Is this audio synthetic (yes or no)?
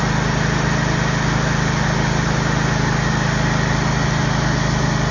no